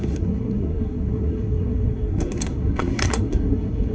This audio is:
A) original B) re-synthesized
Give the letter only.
B